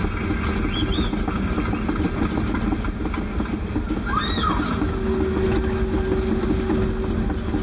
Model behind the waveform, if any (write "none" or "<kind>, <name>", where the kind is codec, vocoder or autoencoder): none